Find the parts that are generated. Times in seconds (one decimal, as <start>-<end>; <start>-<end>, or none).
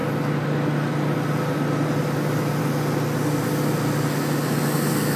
none